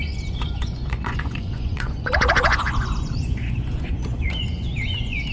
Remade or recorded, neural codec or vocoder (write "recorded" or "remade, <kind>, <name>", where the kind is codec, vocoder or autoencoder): remade, vocoder, Vocos